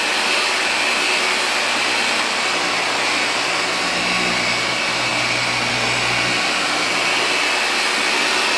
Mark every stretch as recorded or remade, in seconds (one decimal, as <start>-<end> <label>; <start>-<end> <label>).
0.0-8.6 recorded